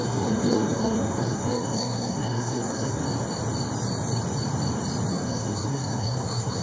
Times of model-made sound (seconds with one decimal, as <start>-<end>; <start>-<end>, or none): 0.0-3.0; 5.1-6.6